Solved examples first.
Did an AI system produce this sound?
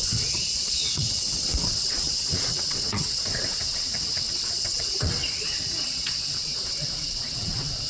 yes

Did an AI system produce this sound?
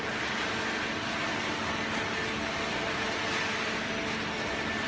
no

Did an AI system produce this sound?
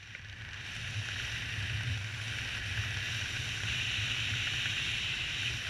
no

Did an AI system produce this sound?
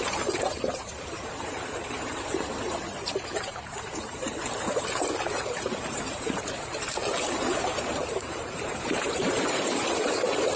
yes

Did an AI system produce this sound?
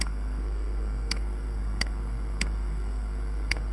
yes